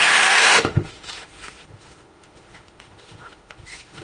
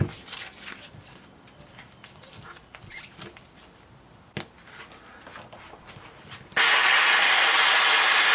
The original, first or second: second